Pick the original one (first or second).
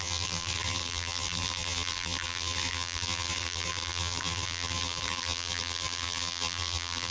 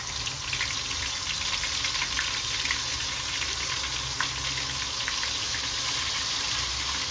second